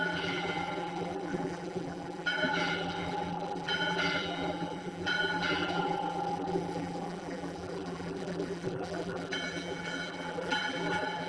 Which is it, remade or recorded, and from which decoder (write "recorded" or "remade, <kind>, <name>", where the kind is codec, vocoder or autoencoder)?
remade, vocoder, BigVGAN v2